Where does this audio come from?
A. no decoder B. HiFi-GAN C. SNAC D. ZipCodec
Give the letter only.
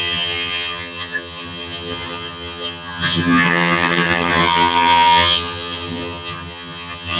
B